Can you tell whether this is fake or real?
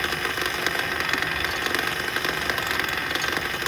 real